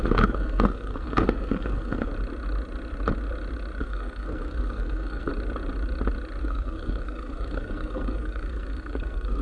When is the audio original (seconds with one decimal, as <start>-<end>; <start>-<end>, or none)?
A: 2.1-3.8; 5.3-6.4